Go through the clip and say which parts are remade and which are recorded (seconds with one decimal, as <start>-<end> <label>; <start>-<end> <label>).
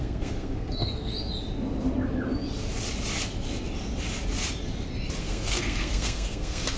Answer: 0.0-1.1 remade; 1.1-5.2 recorded; 5.2-6.8 remade